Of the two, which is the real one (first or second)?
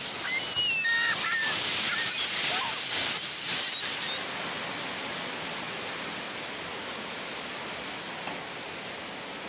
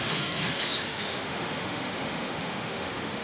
first